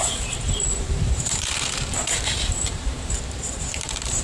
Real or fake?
fake